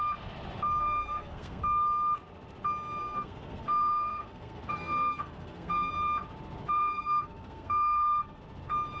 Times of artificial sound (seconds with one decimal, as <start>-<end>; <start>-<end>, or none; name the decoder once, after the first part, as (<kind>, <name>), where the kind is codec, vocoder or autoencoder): 0.8-1.6 (codec, SNAC); 3.0-5.9; 6.6-8.4